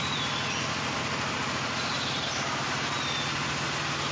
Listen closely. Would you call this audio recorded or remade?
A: recorded